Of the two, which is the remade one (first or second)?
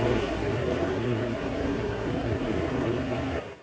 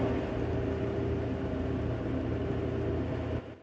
first